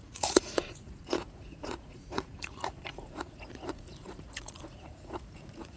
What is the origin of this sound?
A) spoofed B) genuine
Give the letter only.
A